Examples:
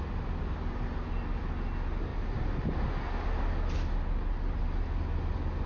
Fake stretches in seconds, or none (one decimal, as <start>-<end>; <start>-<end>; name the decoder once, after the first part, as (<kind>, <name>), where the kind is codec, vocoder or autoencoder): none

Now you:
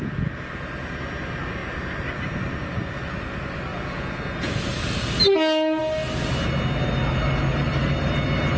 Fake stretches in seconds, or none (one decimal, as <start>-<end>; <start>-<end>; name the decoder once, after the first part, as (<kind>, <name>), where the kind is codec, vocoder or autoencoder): 3.7-4.6 (vocoder, Vocos)

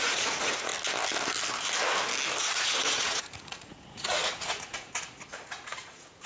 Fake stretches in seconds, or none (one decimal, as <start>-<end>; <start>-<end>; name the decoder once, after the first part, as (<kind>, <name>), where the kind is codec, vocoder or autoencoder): 0.0-0.7 (vocoder, Vocos); 2.4-6.3